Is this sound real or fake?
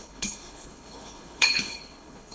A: fake